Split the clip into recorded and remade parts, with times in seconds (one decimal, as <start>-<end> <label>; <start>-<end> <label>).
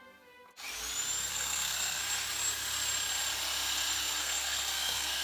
0.0-1.3 recorded; 1.3-2.0 remade; 2.0-4.2 recorded; 4.2-5.2 remade